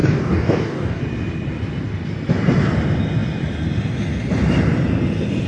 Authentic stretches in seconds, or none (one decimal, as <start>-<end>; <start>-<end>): 1.0-5.5